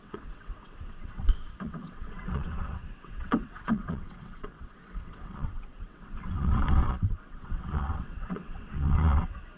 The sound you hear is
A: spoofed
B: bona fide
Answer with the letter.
A